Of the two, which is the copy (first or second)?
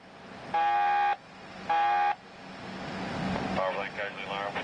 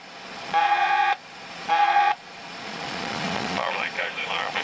second